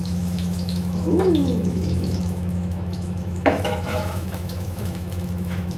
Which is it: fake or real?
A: fake